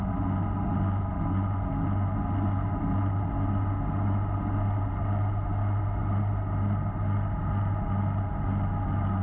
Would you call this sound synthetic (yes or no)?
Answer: no